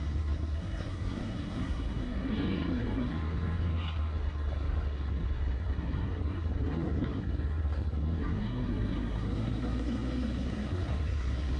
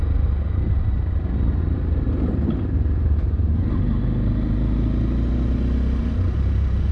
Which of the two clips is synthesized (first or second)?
first